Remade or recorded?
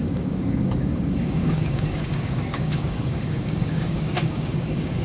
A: remade